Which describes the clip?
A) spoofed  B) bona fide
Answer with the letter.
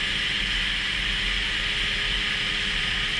B